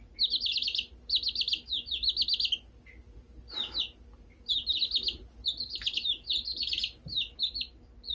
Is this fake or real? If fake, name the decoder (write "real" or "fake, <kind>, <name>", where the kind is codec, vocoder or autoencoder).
real